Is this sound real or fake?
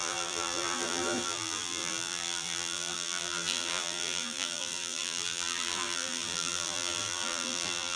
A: fake